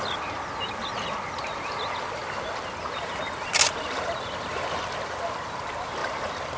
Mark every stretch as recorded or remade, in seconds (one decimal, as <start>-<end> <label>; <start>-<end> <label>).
0.0-6.6 recorded